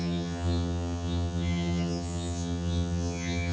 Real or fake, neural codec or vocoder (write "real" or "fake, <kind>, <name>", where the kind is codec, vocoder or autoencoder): fake, vocoder, HiFi-GAN